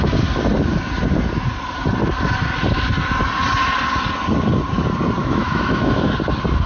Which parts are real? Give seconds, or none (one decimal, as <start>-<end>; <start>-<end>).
0.0-5.2; 6.0-6.7